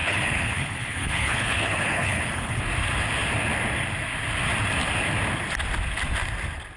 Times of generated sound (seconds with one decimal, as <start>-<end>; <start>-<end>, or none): 0.0-2.6

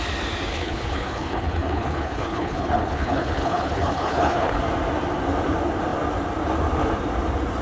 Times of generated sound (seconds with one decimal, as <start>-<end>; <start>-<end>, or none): 0.5-4.6

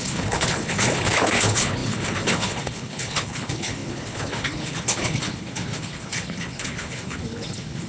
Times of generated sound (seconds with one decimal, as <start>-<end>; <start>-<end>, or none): 0.0-7.9

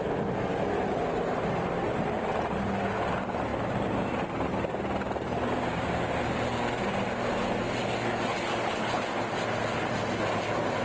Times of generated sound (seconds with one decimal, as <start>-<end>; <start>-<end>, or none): 8.3-9.0